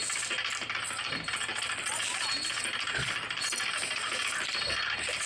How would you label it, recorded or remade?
recorded